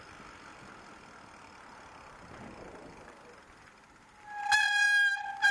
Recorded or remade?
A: recorded